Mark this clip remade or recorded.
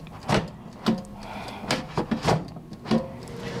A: recorded